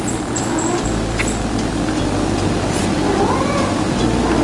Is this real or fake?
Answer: real